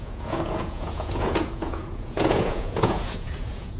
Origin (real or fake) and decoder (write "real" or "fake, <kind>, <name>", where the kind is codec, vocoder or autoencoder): fake, vocoder, Vocos